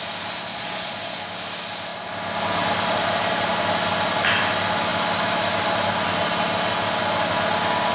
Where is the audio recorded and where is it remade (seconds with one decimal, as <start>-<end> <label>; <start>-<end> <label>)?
0.0-0.5 recorded; 0.5-1.2 remade; 1.2-7.9 recorded